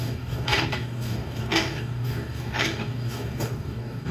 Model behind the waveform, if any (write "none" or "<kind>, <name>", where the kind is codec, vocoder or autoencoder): codec, DAC